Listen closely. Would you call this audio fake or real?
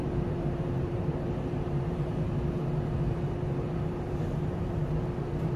fake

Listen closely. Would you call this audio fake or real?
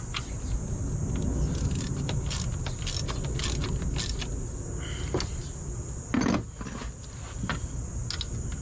real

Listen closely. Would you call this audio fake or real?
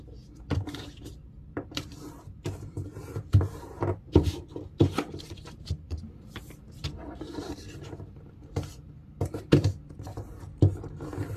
fake